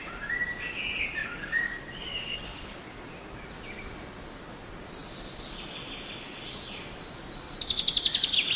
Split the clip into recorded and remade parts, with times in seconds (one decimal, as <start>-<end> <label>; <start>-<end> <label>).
0.0-1.2 recorded; 1.2-3.0 remade; 3.0-8.6 recorded

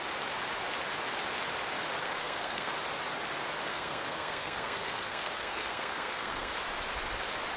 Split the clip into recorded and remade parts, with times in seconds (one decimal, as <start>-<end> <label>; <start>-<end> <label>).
0.0-2.0 recorded; 2.0-2.7 remade; 2.7-3.7 recorded; 3.7-6.5 remade; 6.5-7.6 recorded

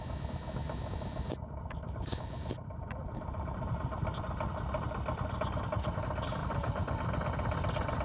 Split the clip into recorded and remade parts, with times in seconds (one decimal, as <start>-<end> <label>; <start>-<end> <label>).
0.0-0.6 recorded; 0.6-4.0 remade; 4.0-6.4 recorded; 6.4-7.0 remade; 7.0-8.0 recorded

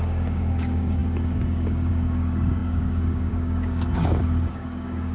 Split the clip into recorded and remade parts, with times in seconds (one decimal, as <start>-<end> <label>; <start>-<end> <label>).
0.0-5.1 remade

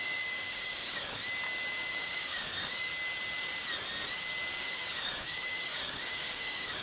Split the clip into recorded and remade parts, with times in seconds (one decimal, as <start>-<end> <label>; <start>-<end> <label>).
0.0-1.2 remade; 1.2-1.9 recorded; 1.9-2.9 remade; 2.9-4.6 recorded; 4.6-6.8 remade